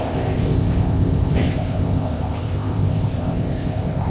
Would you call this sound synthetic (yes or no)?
yes